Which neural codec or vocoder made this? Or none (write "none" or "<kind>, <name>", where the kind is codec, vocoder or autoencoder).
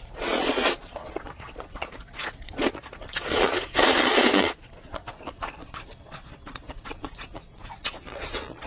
vocoder, Vocos